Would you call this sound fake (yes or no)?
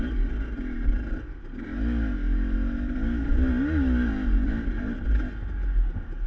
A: no